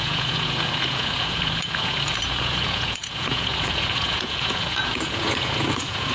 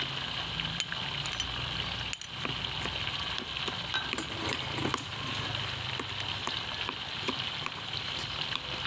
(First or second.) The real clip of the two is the second